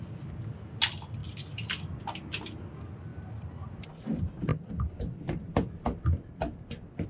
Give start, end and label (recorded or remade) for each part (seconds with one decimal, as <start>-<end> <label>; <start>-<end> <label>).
0.0-1.2 recorded; 1.2-2.0 remade; 2.0-3.1 recorded; 3.1-3.8 remade; 3.8-7.1 recorded